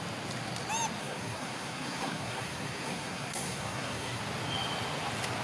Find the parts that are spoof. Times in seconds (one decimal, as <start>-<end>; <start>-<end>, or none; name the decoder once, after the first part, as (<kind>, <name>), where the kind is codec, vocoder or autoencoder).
1.0-4.2 (codec, SNAC)